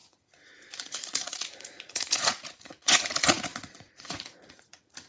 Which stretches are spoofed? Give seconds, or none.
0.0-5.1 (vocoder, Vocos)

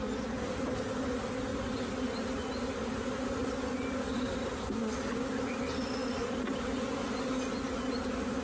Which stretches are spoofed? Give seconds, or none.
none

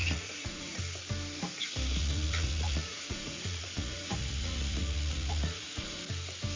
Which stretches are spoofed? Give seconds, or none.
0.0-0.8 (vocoder, Vocos); 2.0-6.0

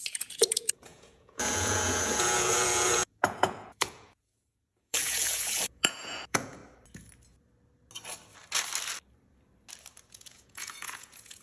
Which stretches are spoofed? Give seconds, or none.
0.0-6.6 (vocoder, Vocos); 10.1-11.4

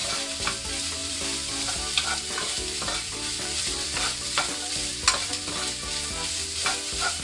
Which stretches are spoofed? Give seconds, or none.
1.0-5.3 (vocoder, BigVGAN v2)